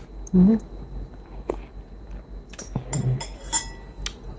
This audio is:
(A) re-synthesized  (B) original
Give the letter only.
B